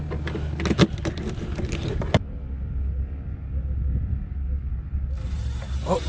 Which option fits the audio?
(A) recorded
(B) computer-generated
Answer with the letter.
A